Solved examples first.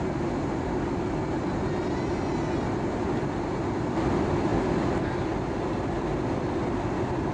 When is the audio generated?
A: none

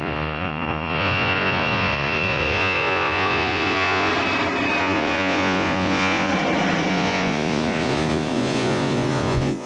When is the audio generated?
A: 0.0-4.1 (vocoder, Vocos); 4.8-6.3; 6.9-9.7

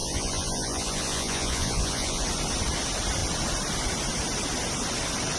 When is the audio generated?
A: 0.0-2.2 (vocoder, Vocos)

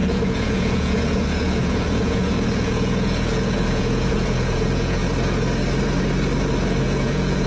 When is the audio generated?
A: 0.0-5.0 (vocoder, Vocos); 6.8-7.5

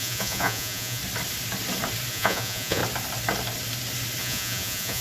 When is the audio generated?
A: 0.0-1.0 (vocoder, Vocos); 2.1-2.8; 4.2-5.0

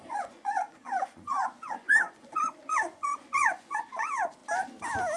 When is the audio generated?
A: 0.0-4.4 (vocoder, Vocos)

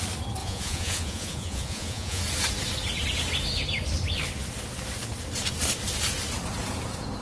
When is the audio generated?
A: 0.4-2.2 (vocoder, Vocos)